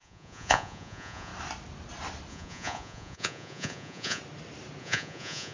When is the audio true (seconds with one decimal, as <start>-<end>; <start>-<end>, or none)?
1.3-2.3; 4.2-4.8